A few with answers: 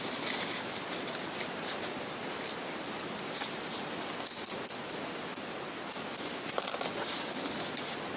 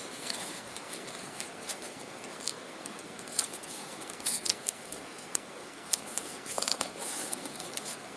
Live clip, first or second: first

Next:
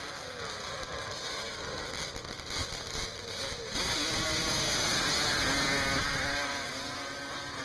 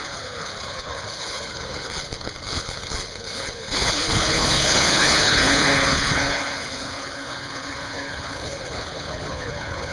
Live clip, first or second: first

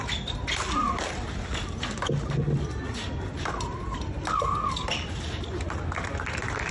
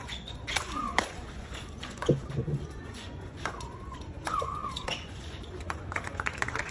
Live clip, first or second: first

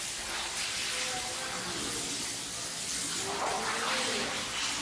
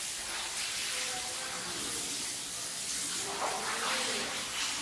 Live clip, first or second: first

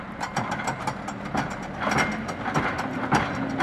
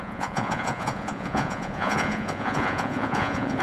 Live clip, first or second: first